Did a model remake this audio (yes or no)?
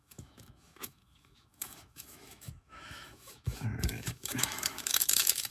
yes